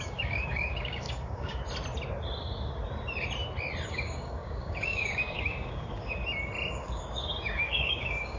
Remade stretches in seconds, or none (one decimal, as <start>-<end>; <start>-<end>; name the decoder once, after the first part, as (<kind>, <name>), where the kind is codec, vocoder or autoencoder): 0.0-1.6 (codec, DAC); 3.9-6.2; 6.7-8.4